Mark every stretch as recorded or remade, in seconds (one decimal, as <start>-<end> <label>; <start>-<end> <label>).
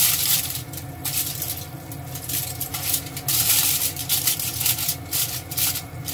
0.0-6.1 recorded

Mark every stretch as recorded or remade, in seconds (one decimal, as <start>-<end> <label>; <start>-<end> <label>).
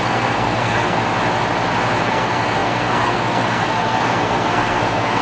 0.0-1.0 remade; 1.0-2.0 recorded; 2.0-5.2 remade